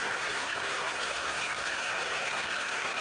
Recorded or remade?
remade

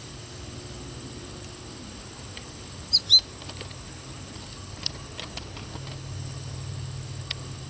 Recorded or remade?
recorded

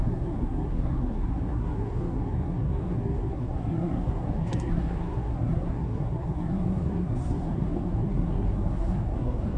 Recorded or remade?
remade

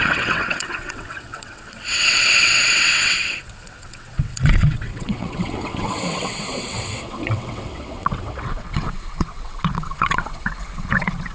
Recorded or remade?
remade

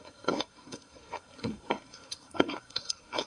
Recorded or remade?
remade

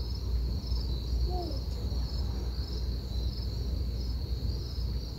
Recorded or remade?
recorded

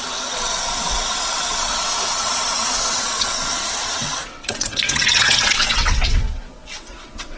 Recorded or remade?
remade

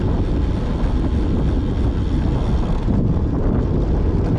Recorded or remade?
recorded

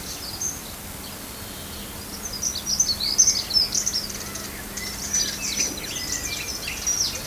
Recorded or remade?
recorded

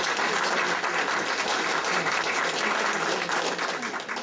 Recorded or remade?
recorded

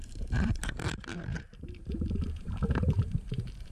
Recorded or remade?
remade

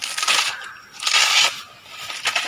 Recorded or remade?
recorded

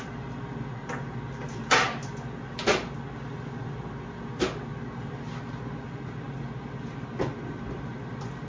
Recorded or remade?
recorded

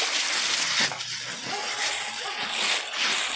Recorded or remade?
recorded